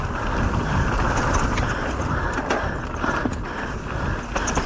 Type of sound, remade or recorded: recorded